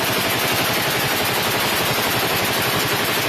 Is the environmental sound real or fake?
real